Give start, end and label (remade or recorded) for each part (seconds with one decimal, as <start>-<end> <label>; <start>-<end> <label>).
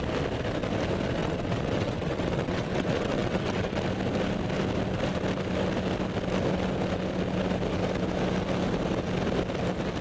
0.0-1.2 recorded; 1.2-3.8 remade; 3.8-10.0 recorded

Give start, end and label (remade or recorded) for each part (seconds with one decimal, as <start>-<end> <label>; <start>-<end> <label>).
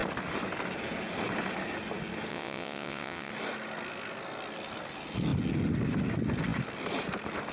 0.0-2.3 recorded; 2.3-3.3 remade; 3.3-7.5 recorded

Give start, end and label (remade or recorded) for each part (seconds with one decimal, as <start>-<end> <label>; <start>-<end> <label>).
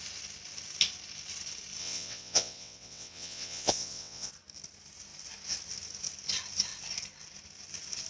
0.0-1.8 recorded; 1.8-4.3 remade; 4.3-8.1 recorded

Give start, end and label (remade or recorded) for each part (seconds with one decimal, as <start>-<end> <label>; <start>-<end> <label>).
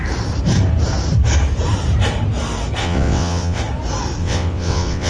0.0-2.8 recorded; 2.8-3.6 remade; 3.6-4.2 recorded; 4.2-5.1 remade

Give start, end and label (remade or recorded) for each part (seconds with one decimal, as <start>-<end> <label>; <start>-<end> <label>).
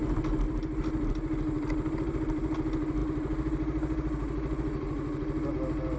0.0-6.0 recorded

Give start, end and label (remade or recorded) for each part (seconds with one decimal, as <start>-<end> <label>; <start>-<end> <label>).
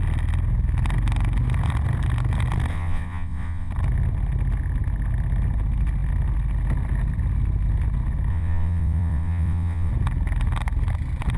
0.0-2.7 recorded; 2.7-3.7 remade; 3.7-8.3 recorded; 8.3-9.9 remade; 9.9-11.4 recorded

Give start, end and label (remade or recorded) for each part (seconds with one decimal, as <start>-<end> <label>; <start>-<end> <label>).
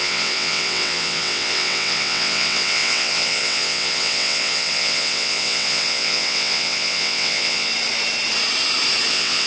0.0-7.7 remade; 7.7-9.1 recorded; 9.1-9.5 remade